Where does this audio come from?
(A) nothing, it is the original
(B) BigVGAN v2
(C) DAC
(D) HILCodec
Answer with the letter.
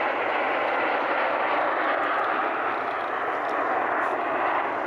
A